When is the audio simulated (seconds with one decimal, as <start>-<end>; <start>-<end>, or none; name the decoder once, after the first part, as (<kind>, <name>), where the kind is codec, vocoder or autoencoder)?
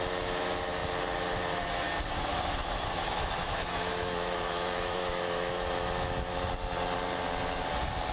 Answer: 2.3-6.5 (autoencoder, DAC-VAE)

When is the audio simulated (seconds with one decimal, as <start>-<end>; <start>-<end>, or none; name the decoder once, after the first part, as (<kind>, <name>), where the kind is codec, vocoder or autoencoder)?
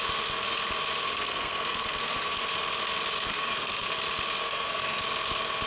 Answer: 1.0-2.4 (codec, SNAC); 3.3-3.9; 4.4-5.0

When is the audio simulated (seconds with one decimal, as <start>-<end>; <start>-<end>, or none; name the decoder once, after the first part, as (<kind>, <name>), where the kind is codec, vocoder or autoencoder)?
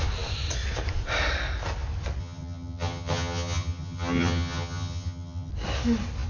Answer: 2.2-5.5 (vocoder, HiFi-GAN)